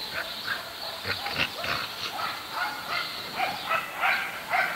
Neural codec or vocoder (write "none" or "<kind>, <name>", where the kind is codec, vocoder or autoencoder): none